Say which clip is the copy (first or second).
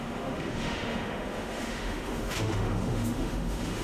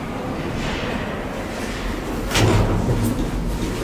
first